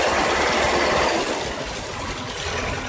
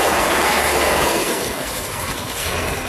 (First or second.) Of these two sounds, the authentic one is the first